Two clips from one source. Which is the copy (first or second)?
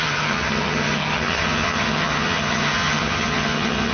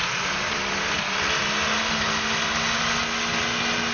first